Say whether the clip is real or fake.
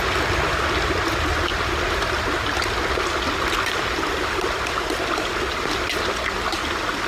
real